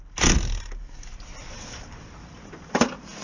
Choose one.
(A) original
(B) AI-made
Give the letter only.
A